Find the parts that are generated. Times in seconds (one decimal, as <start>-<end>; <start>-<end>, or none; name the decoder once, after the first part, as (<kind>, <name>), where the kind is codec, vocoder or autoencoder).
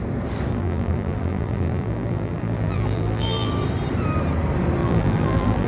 0.5-3.5 (vocoder, BigVGAN v2); 4.8-5.7